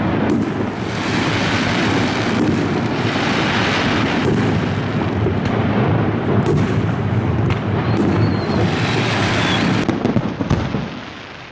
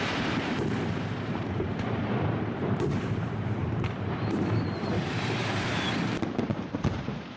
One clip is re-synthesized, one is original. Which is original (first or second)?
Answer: first